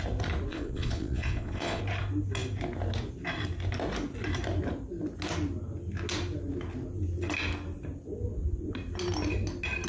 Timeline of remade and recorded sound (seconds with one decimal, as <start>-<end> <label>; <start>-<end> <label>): 0.0-0.5 recorded; 0.5-1.8 remade; 1.8-9.9 recorded